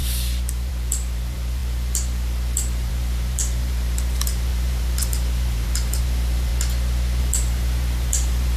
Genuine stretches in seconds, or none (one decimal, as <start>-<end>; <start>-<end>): 6.5-7.2

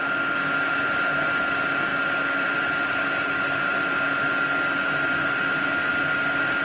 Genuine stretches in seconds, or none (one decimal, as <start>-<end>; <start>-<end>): 0.0-6.6

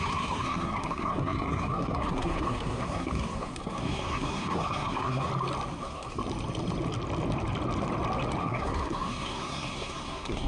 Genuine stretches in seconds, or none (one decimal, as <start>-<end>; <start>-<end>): 5.3-5.8; 6.2-8.4